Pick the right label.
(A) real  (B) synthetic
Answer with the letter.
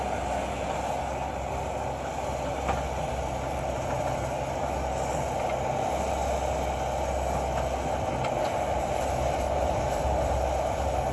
A